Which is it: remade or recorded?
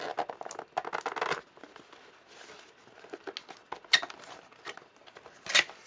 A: recorded